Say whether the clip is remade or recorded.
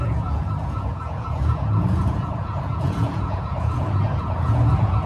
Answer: remade